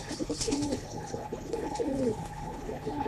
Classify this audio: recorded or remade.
remade